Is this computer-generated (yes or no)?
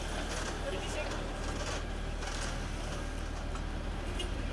no